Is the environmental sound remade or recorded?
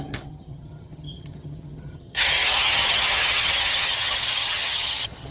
remade